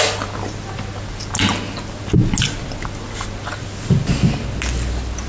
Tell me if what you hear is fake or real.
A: real